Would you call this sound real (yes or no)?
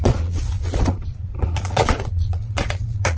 no